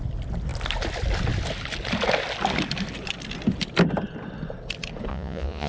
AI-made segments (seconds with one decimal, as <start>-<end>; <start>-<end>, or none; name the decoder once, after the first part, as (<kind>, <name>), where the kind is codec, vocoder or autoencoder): 5.1-5.7 (vocoder, Vocos)